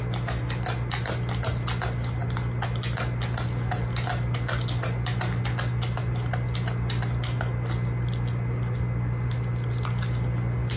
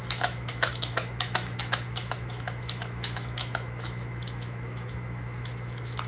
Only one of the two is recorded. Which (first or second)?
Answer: first